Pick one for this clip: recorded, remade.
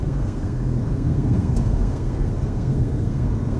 remade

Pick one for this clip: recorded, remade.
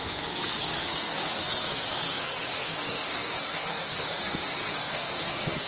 remade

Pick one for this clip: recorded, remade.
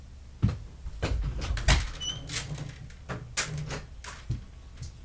recorded